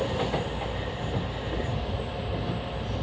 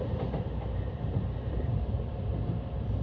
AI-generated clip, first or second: second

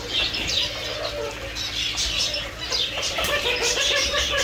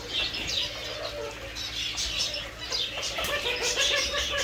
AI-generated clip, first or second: first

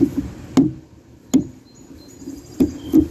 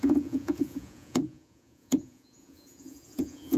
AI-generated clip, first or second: second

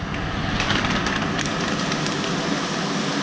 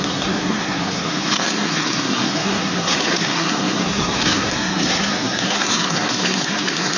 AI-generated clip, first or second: second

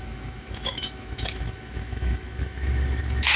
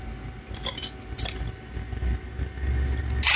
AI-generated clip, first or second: first